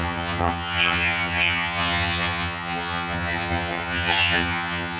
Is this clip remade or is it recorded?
remade